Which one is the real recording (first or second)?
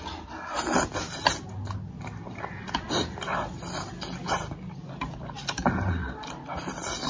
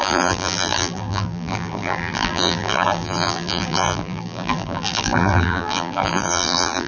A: first